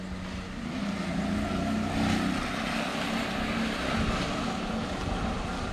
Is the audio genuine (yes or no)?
yes